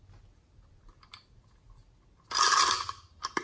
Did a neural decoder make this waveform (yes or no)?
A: no